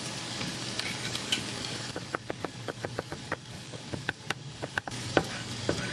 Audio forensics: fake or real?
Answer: fake